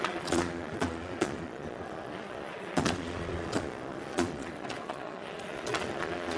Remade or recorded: remade